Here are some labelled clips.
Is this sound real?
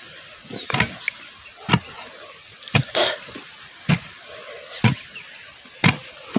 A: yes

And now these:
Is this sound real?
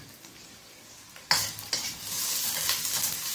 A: yes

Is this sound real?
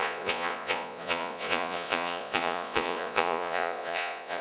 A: no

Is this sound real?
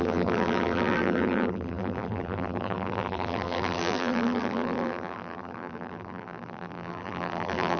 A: no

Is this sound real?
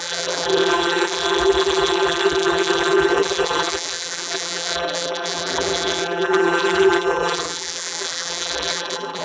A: no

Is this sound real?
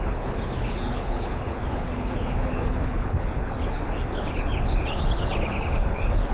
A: no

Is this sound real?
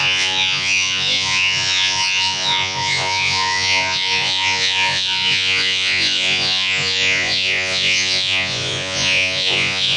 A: no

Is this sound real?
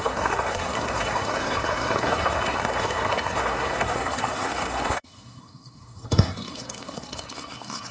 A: no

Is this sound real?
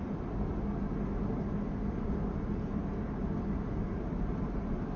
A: yes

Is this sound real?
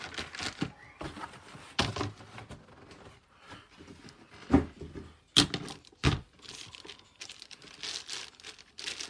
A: yes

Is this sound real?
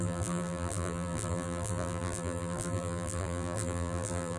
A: no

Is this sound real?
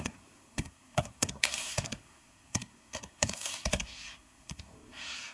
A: no